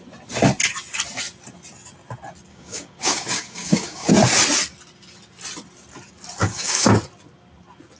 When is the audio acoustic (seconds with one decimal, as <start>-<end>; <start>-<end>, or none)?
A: 0.0-2.5; 4.1-6.4; 6.9-8.0